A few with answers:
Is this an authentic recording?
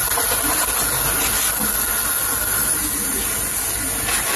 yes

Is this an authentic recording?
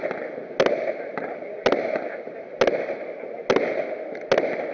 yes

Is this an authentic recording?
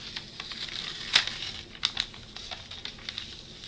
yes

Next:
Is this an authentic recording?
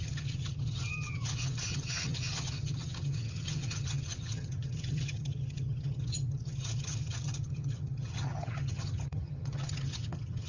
no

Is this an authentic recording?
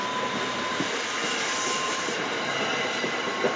yes